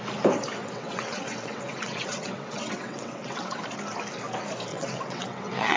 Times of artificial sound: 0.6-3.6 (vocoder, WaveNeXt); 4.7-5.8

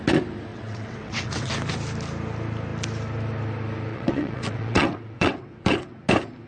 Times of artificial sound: 0.5-1.5 (vocoder, WaveNeXt); 3.9-6.0

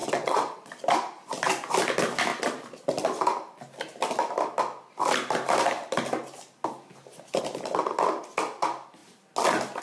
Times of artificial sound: 0.0-0.7 (vocoder, WaveNeXt)

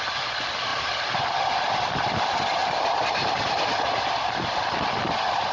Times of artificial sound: none